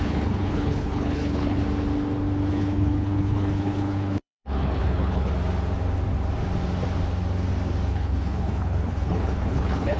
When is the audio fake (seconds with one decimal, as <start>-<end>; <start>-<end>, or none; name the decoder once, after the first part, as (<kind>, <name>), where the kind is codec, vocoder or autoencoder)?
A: 0.0-1.6 (codec, HILCodec); 2.5-5.3; 7.9-10.0